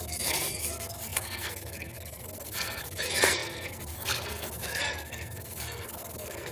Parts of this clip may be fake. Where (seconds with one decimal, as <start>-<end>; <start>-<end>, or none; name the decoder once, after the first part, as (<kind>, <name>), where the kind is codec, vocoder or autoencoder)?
0.0-6.5 (codec, SNAC)